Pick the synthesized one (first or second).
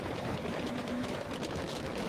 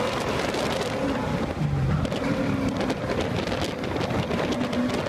first